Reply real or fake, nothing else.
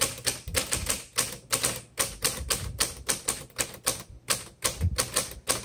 real